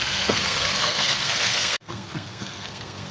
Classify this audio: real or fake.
fake